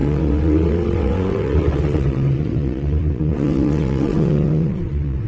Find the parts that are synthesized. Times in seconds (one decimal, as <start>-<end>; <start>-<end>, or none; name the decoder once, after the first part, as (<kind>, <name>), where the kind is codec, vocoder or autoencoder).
0.0-5.3 (vocoder, WaveNeXt)